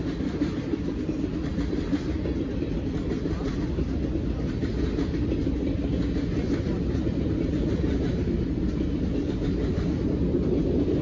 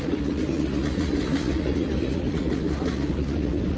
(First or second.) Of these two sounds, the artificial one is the second